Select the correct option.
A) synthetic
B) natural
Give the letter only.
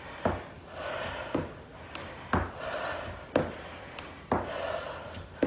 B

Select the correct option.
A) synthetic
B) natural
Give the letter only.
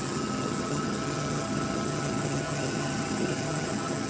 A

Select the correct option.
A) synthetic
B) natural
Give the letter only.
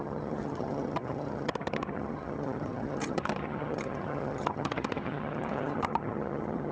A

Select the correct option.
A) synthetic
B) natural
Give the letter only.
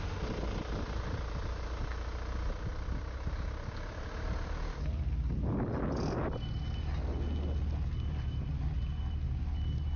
B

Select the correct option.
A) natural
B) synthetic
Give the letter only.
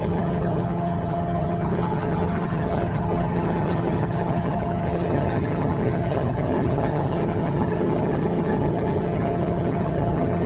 B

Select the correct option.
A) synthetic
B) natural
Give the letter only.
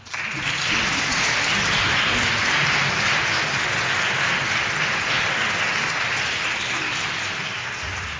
B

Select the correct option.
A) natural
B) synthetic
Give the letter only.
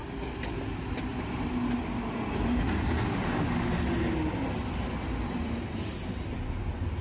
A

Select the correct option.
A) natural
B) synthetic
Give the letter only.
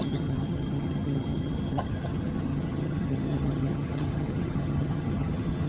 B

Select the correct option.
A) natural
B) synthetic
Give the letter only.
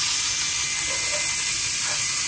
A